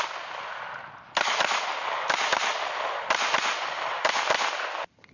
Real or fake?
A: real